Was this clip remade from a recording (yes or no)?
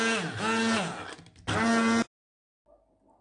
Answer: no